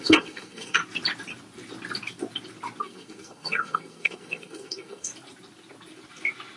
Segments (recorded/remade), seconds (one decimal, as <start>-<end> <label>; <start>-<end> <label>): 0.0-0.8 remade; 0.8-2.8 recorded; 2.8-5.1 remade; 5.1-6.6 recorded